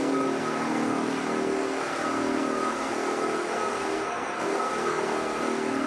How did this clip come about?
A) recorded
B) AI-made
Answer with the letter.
B